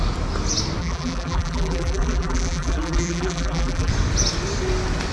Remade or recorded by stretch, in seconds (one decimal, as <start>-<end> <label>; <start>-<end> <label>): 0.0-0.8 recorded; 0.8-3.9 remade; 3.9-5.1 recorded